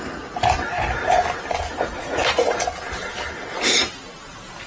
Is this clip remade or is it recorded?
recorded